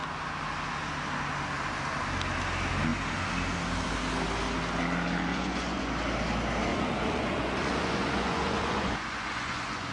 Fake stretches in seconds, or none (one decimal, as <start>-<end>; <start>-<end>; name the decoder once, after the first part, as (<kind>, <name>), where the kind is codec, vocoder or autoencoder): 5.3-5.9 (vocoder, Vocos); 6.7-9.9